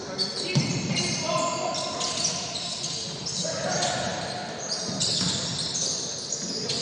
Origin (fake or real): real